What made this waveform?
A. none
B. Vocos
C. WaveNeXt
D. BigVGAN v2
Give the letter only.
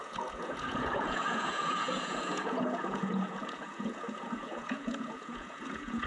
B